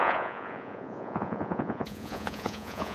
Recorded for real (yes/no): no